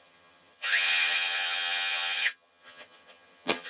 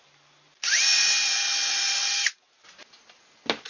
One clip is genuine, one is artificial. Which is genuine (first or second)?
second